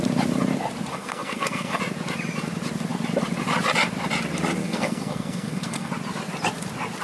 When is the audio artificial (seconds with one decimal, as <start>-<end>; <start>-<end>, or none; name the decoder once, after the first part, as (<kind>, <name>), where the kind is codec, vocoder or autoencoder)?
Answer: 0.9-1.8 (codec, SNAC); 4.6-5.9